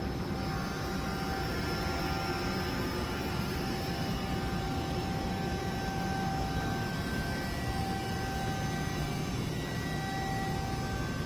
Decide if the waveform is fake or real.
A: real